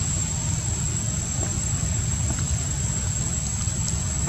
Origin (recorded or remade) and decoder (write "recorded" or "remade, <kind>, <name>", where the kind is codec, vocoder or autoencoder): recorded